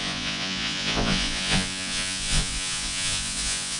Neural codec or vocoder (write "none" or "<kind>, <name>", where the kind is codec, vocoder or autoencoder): vocoder, Vocos